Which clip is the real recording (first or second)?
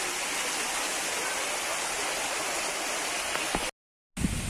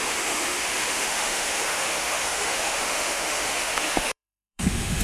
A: first